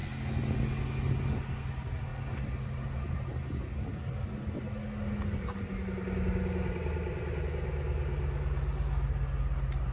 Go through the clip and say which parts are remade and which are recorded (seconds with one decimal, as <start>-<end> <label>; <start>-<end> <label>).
0.0-9.9 recorded